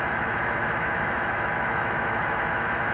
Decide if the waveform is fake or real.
fake